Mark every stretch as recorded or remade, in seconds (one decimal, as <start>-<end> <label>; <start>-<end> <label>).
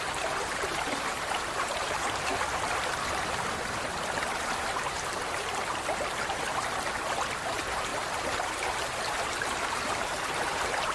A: 0.0-2.3 remade; 2.3-7.5 recorded; 7.5-10.9 remade